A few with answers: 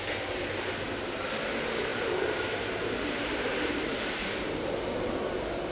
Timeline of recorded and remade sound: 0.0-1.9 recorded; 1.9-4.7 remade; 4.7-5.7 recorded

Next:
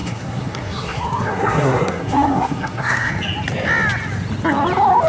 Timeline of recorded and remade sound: 0.0-3.1 remade; 3.1-5.1 recorded

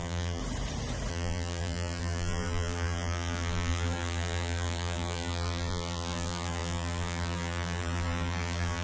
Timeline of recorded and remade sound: 0.0-0.4 remade; 0.4-1.1 recorded; 1.1-8.8 remade